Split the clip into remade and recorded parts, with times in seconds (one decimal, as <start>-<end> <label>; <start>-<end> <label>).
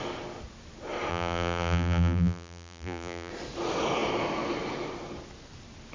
0.0-1.1 recorded; 1.1-3.3 remade; 3.3-5.9 recorded